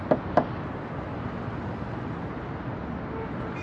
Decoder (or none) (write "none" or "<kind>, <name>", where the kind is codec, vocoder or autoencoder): none